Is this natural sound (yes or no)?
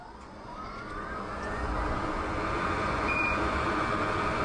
no